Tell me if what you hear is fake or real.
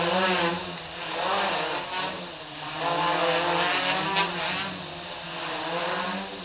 real